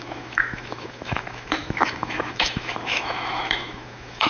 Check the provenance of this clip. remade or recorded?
remade